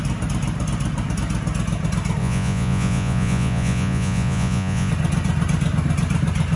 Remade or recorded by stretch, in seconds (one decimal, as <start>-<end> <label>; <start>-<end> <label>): 0.0-2.2 recorded; 2.2-4.9 remade; 4.9-6.6 recorded

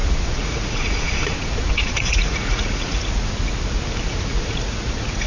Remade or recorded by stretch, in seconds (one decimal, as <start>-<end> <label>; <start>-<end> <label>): 0.0-3.5 remade; 3.5-4.1 recorded; 4.1-5.3 remade